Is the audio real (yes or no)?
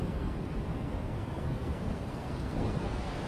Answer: no